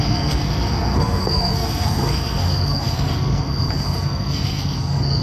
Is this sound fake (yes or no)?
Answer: yes